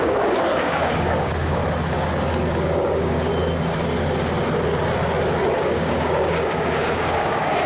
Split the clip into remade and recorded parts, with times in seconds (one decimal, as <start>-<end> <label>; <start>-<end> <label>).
0.0-1.6 remade; 1.6-2.5 recorded; 2.5-3.3 remade; 3.3-5.6 recorded; 5.6-7.7 remade